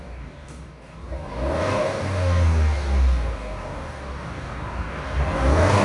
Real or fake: fake